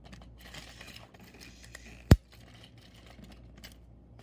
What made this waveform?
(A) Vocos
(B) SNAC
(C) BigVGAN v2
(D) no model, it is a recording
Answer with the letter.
D